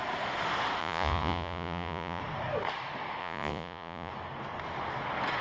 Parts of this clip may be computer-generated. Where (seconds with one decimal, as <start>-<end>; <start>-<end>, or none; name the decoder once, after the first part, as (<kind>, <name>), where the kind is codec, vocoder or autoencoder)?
0.8-2.2 (vocoder, Vocos); 3.2-4.1